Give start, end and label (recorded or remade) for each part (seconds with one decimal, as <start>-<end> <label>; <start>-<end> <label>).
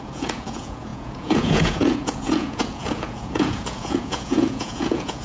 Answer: 0.0-5.2 remade